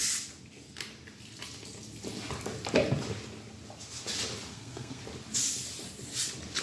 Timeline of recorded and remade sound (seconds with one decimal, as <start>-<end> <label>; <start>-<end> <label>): 0.0-4.5 recorded; 4.5-5.0 remade; 5.0-6.6 recorded